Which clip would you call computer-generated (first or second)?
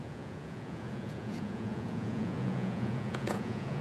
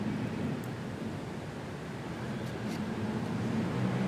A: first